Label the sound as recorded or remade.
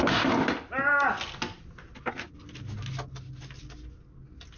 recorded